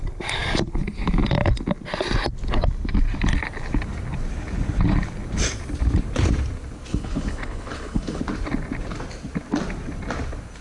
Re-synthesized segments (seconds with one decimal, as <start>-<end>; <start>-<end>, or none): 6.9-8.2